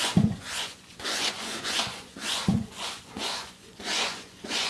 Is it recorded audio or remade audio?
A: remade